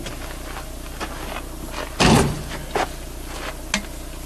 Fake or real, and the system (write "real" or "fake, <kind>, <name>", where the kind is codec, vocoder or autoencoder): real